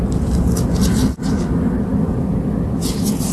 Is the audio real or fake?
real